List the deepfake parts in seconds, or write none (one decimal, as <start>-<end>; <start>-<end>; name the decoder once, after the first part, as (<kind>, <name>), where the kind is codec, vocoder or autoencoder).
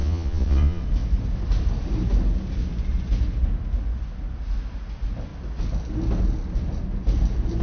0.0-0.8 (vocoder, Vocos)